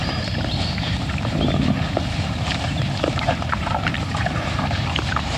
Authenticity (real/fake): fake